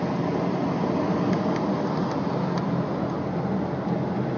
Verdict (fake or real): real